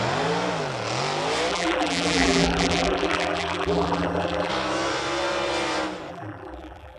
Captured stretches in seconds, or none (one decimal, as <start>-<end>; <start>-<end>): 0.0-1.5; 4.5-6.1